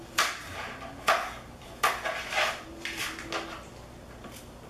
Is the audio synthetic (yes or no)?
no